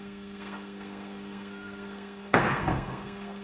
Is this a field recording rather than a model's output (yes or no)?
no